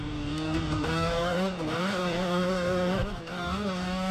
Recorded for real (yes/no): no